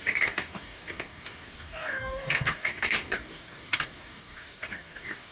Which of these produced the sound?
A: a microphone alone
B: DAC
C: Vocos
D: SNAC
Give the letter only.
B